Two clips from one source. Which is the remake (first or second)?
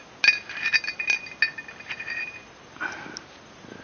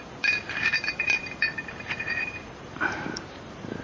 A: second